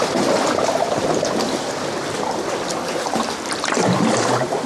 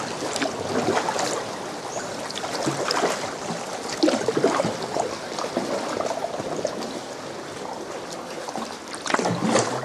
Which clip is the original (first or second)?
second